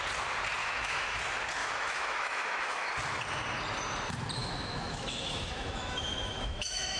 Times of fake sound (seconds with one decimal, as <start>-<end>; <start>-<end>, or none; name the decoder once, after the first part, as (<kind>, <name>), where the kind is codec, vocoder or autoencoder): 0.6-1.2 (autoencoder, DAC-VAE); 1.6-2.9; 4.4-7.0